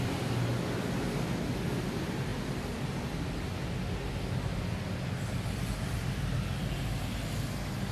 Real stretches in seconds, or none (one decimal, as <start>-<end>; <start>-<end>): 0.0-7.9